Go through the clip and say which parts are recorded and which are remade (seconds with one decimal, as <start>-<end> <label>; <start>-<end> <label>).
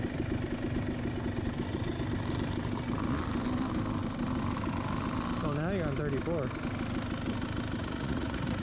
0.0-7.8 recorded; 7.8-8.6 remade